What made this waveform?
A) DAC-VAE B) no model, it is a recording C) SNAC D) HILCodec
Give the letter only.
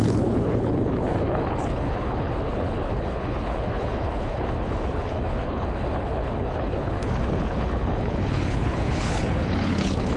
D